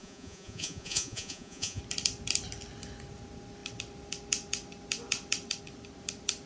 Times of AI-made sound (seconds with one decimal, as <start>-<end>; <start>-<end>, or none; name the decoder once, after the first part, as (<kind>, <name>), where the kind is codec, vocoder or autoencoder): 0.0-1.8 (vocoder, Vocos)